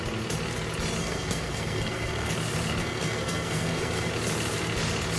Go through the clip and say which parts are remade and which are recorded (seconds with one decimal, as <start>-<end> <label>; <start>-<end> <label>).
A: 0.0-1.0 recorded; 1.0-2.3 remade; 2.3-2.8 recorded; 2.8-4.1 remade; 4.1-5.2 recorded